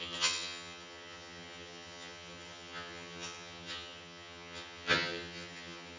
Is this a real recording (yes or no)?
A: no